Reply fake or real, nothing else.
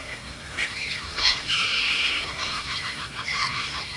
fake